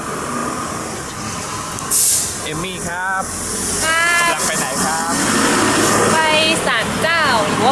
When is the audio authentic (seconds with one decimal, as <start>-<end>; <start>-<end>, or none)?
0.0-7.7